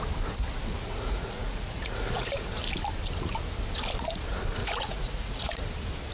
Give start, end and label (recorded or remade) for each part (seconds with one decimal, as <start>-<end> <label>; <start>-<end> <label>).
0.0-0.7 recorded; 0.7-2.6 remade; 2.6-4.6 recorded; 4.6-5.6 remade; 5.6-6.1 recorded